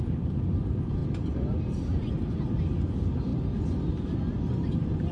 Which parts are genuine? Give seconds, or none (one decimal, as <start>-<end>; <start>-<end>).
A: 3.3-4.5

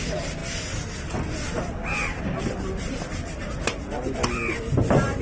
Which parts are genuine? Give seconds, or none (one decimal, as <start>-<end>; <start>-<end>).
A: 0.0-5.2

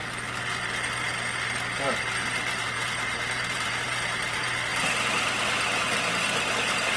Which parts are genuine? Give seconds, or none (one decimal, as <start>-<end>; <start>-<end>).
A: 0.0-1.8; 4.7-6.5

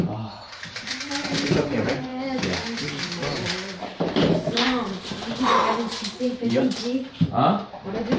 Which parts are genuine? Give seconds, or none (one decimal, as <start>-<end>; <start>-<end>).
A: 2.1-2.8; 3.3-4.5

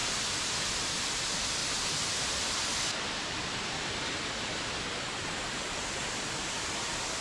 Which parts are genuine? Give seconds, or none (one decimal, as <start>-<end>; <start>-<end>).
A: 0.0-1.6; 4.2-6.0; 6.7-7.2